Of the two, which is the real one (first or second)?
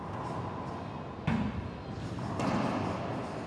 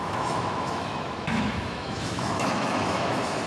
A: first